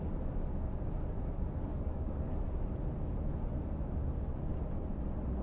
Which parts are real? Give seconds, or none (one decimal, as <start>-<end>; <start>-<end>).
0.0-1.7; 2.4-5.4